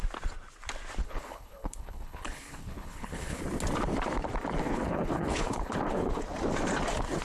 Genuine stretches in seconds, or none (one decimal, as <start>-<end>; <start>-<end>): 0.0-1.0; 3.4-4.6; 6.2-7.2